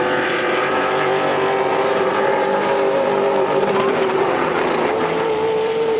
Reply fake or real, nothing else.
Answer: fake